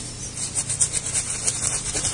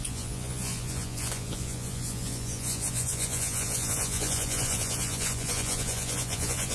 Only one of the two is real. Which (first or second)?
first